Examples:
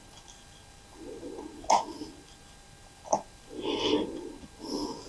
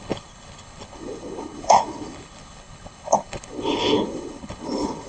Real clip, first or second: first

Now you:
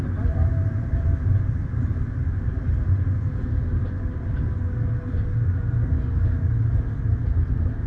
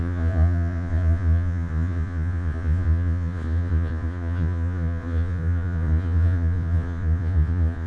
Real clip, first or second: first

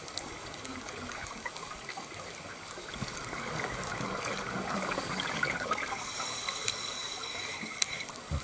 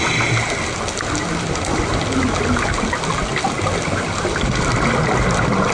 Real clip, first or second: second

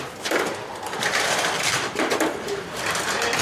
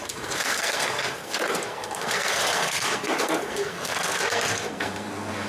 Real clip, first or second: first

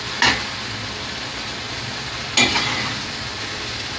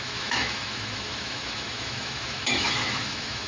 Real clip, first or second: first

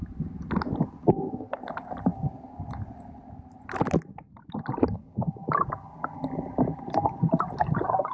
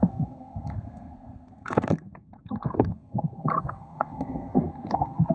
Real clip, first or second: first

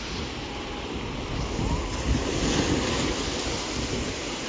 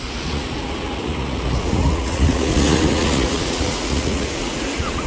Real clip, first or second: first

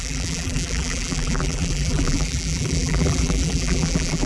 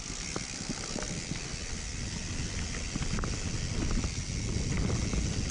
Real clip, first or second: second